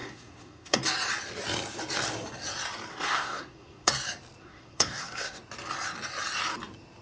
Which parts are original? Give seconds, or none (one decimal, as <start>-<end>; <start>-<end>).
0.8-2.9; 3.9-4.4; 5.4-7.0